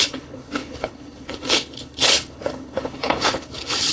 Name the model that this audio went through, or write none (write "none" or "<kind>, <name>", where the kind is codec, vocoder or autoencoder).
codec, HILCodec